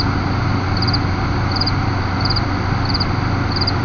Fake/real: real